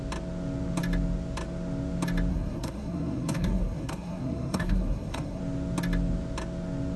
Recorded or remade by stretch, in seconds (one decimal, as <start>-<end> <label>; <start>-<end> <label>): 0.0-2.3 recorded; 2.3-5.4 remade; 5.4-7.0 recorded